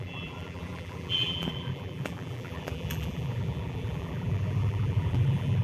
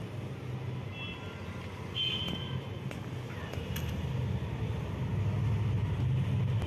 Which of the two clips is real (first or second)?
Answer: second